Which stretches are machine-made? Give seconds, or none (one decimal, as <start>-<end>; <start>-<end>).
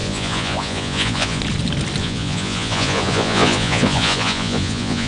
0.0-1.4; 2.0-5.1